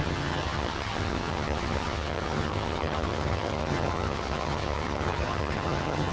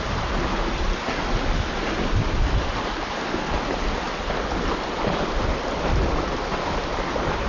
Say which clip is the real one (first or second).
second